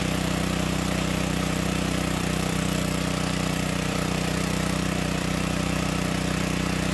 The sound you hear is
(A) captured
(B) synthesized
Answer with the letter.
B